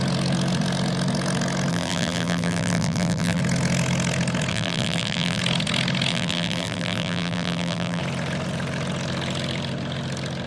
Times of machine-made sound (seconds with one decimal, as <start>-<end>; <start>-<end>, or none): 1.7-3.4; 4.5-5.4; 6.1-8.0